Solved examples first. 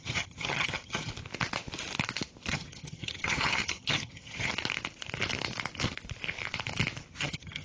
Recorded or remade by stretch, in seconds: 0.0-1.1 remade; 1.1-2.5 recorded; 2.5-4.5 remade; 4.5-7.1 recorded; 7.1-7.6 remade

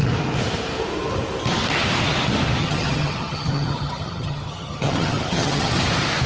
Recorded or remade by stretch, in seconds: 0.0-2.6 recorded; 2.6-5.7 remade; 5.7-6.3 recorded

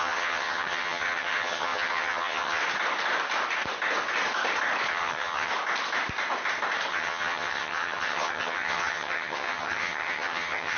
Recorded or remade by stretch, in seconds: 0.0-2.6 remade; 2.6-4.9 recorded; 4.9-5.5 remade; 5.5-6.9 recorded; 6.9-10.8 remade

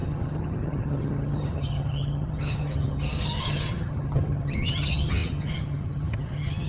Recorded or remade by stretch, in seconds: 0.0-6.7 remade

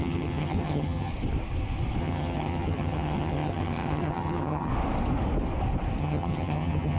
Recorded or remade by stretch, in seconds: 0.0-1.1 remade; 1.1-2.0 recorded; 2.0-4.7 remade; 4.7-6.0 recorded; 6.0-7.0 remade

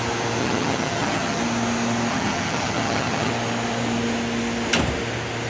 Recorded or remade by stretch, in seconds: 0.0-0.4 recorded; 0.4-1.4 remade; 1.4-2.1 recorded; 2.1-3.3 remade; 3.3-5.5 recorded